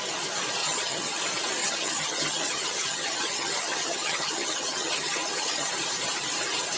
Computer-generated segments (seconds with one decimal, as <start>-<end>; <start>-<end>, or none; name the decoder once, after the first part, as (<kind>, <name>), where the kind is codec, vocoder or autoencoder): 0.6-1.2 (vocoder, HiFi-GAN); 1.6-5.7